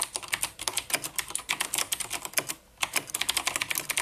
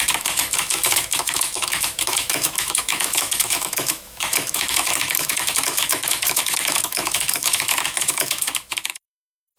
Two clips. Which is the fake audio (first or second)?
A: second